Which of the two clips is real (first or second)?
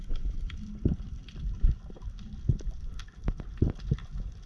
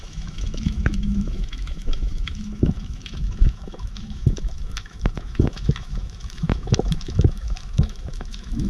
first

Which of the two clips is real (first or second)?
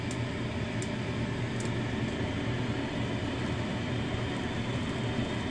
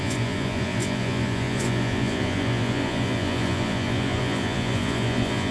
first